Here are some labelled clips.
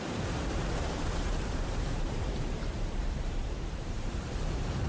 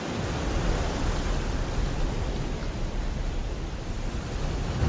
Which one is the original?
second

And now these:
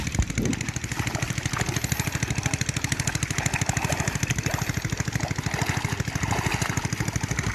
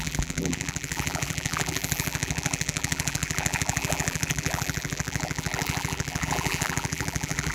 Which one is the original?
first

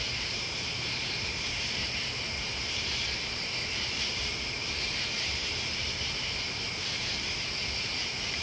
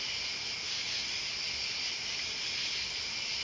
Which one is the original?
second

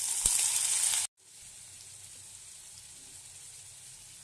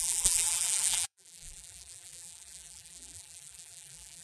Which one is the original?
first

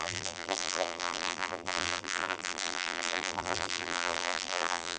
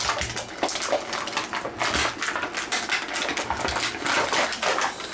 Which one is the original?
second